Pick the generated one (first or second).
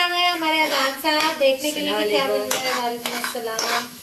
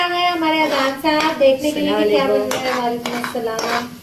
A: first